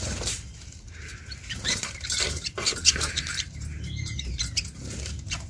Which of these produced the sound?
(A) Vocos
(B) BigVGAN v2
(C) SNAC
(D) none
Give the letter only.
B